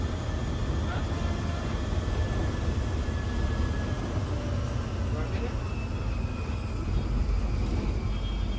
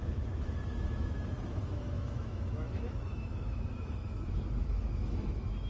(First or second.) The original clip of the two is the first